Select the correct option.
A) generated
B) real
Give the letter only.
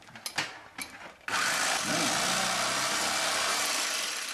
B